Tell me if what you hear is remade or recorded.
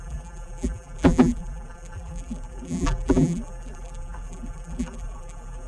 remade